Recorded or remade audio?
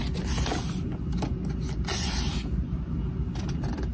recorded